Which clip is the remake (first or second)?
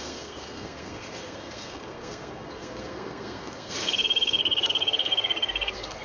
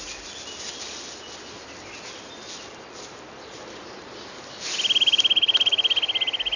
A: first